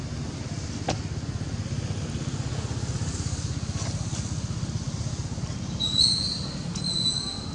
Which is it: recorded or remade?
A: recorded